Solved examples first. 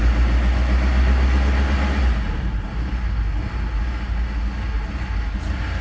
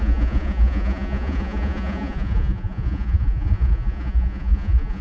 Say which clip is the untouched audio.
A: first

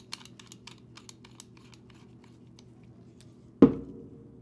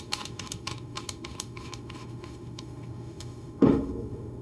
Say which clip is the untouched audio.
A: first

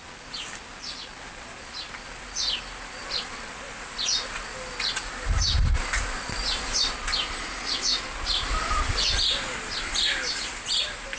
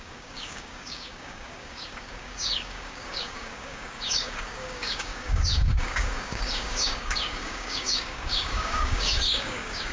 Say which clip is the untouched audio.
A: first